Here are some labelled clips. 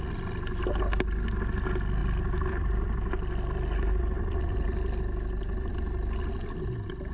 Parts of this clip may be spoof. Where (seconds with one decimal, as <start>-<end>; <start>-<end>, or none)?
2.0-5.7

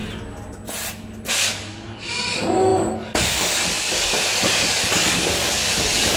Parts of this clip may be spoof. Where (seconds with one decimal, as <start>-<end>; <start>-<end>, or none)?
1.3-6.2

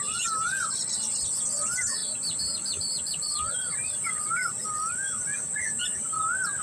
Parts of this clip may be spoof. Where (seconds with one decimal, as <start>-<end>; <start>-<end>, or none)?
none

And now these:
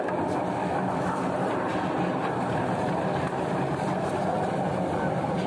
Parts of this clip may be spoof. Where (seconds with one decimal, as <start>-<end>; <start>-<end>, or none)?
0.6-1.2

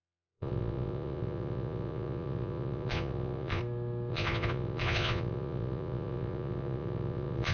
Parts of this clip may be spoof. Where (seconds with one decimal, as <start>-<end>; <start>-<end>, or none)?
0.0-3.6; 4.1-7.5

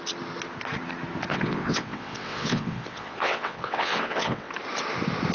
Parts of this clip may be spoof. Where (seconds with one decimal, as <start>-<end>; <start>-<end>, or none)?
1.3-4.5